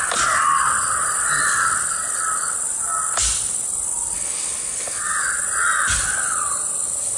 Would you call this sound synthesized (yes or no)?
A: no